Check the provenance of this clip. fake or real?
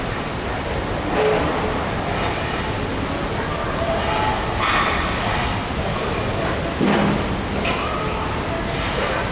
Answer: real